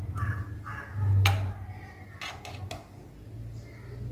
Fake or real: real